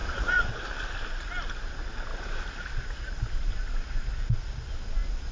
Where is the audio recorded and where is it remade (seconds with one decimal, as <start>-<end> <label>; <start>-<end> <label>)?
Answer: 0.0-0.5 remade; 0.5-5.3 recorded